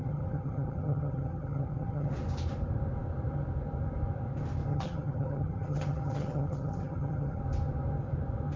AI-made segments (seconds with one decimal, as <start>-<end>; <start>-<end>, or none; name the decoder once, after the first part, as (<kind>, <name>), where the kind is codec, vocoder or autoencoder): 0.0-2.1 (vocoder, HiFi-GAN); 4.7-7.4